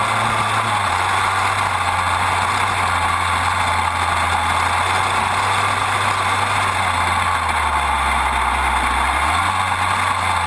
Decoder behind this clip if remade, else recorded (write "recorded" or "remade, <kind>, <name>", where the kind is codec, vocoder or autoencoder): recorded